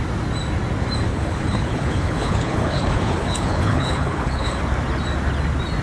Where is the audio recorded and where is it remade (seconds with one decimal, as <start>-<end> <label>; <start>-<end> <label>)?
0.0-1.1 recorded; 1.1-4.6 remade; 4.6-5.8 recorded